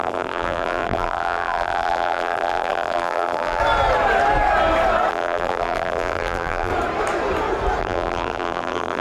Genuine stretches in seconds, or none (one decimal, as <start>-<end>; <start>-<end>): 3.6-5.1; 6.7-7.8